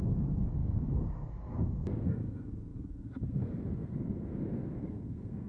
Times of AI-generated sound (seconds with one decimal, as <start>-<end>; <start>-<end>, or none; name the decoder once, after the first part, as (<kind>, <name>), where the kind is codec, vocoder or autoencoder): 0.0-5.5 (codec, SNAC)